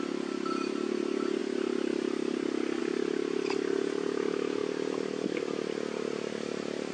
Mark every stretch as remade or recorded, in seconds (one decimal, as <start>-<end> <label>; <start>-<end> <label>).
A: 0.0-6.9 recorded